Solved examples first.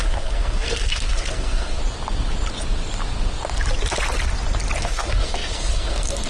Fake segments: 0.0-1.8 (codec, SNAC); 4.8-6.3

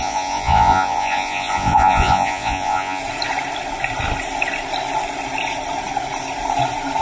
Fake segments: 0.0-3.0 (vocoder, Vocos)